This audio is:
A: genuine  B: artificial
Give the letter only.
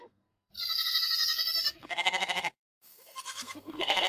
B